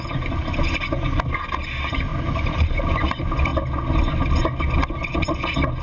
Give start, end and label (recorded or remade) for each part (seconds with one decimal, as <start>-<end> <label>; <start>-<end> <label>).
0.0-2.1 recorded; 2.1-2.8 remade; 2.8-5.8 recorded